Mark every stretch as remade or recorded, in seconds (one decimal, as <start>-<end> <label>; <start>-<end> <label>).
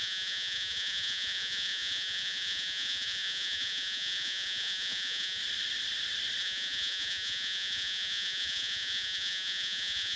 0.0-5.4 remade; 5.4-6.4 recorded; 6.4-10.2 remade